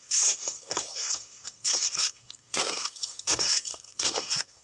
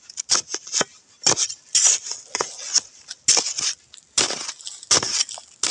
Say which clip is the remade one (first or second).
first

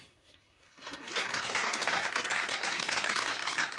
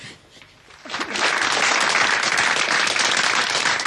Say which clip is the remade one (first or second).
first